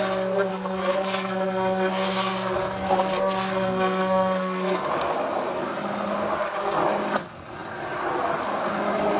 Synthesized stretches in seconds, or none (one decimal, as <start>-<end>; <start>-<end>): 0.5-1.9; 2.9-4.9